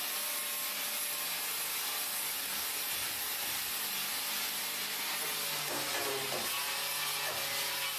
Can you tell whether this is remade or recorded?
recorded